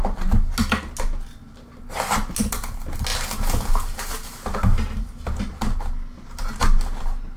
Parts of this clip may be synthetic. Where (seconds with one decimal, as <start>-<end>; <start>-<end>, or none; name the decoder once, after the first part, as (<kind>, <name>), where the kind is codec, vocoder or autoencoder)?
none